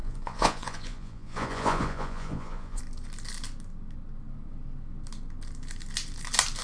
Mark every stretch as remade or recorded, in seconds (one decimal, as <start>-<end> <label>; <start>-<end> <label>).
0.0-2.8 remade; 2.8-6.6 recorded